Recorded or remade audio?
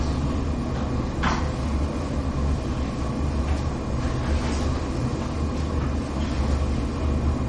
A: recorded